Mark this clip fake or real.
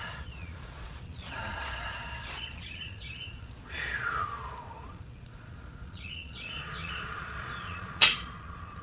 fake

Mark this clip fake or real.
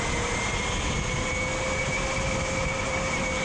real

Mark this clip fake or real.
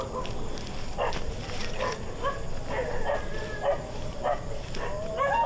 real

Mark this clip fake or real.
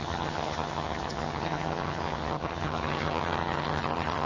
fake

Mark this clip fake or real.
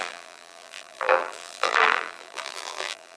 fake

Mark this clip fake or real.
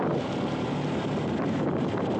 real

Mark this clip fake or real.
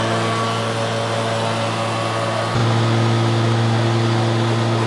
real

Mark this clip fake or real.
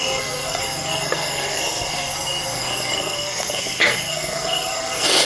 fake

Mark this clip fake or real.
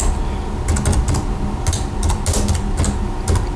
real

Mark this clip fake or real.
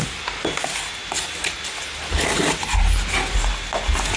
real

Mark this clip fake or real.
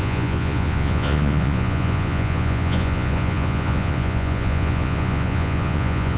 fake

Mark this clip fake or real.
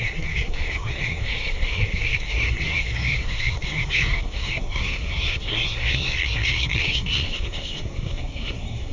fake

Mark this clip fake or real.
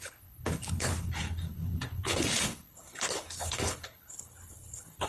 fake